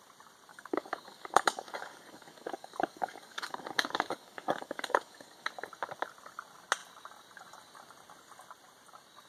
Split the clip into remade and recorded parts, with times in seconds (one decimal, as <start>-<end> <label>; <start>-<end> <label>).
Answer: 0.0-0.5 recorded; 0.5-5.5 remade; 5.5-9.3 recorded